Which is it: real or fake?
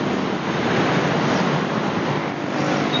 real